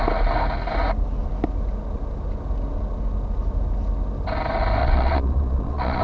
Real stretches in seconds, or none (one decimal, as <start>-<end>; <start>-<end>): 0.0-4.8

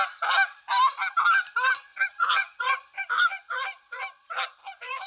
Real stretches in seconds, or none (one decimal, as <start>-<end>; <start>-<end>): 0.0-1.9; 4.0-4.6

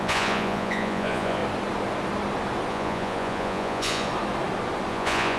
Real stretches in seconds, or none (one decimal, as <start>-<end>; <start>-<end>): 1.4-2.7; 4.1-4.9

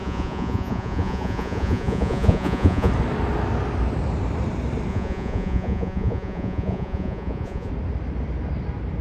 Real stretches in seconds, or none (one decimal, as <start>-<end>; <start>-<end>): 2.9-4.9; 7.7-9.0

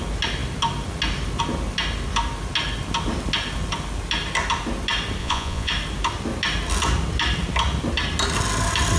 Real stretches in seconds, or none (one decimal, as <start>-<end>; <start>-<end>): 0.0-5.2; 5.7-9.0

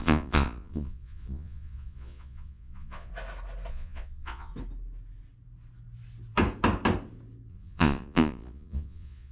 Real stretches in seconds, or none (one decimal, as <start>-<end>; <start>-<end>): 3.1-3.7; 4.5-7.5

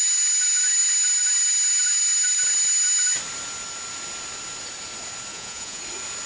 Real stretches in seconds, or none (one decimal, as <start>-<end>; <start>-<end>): 0.0-5.3; 5.8-6.3

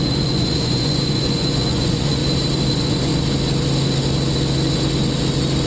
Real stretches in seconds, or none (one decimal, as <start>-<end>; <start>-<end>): 2.2-2.7; 3.1-5.7